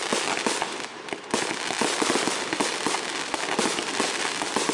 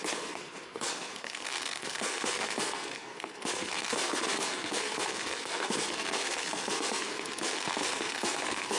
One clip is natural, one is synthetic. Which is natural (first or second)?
first